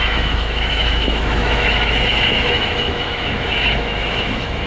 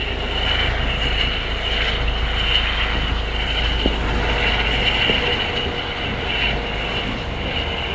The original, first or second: second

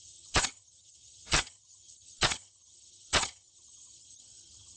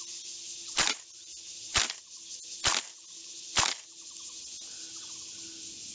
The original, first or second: second